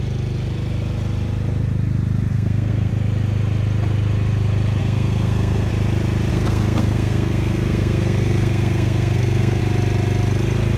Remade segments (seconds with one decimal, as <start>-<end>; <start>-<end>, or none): 2.3-2.9; 4.8-5.7; 6.3-9.6